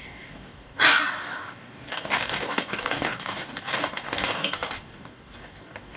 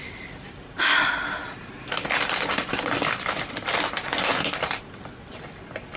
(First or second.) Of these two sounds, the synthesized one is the first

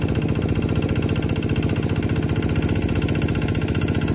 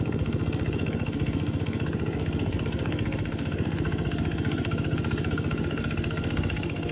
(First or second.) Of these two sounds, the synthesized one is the second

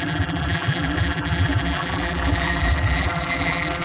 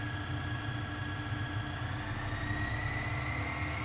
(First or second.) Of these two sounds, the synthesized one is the first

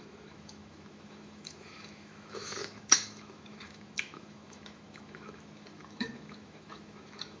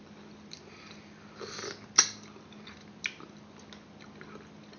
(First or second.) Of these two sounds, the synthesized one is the first